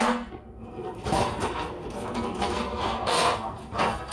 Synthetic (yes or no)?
yes